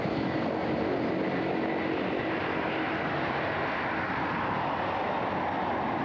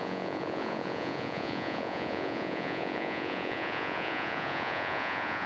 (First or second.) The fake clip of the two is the second